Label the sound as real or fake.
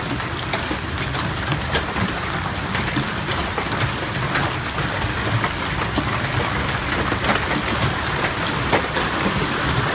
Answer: real